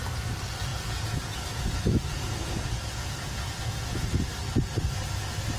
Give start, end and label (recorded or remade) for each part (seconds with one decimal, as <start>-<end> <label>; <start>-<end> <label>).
0.0-0.7 recorded; 0.7-4.1 remade; 4.1-5.6 recorded